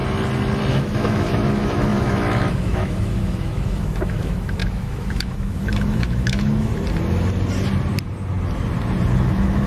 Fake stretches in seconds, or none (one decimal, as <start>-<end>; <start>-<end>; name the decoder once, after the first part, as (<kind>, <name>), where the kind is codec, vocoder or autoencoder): 0.7-6.7 (autoencoder, DAC-VAE); 9.2-9.7